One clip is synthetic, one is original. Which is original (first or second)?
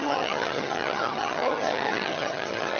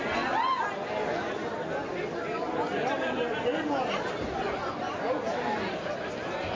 second